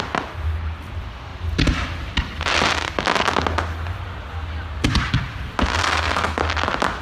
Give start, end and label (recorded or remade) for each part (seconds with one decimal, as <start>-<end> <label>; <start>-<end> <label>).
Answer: 0.0-5.8 recorded; 5.8-6.4 remade; 6.4-7.0 recorded